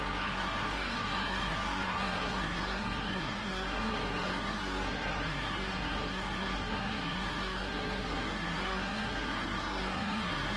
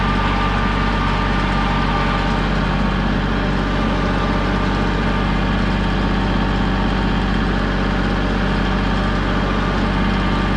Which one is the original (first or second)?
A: second